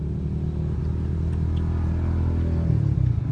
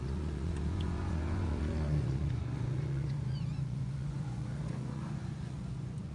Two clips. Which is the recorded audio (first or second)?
first